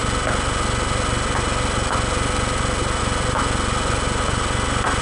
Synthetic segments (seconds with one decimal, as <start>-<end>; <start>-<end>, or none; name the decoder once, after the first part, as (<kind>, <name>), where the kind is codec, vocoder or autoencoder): none